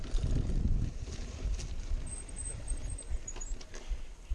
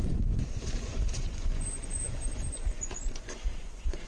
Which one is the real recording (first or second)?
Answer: first